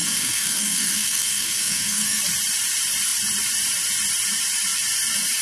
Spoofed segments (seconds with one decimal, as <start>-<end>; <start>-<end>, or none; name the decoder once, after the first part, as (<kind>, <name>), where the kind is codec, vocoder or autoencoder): 0.0-2.2 (codec, SNAC)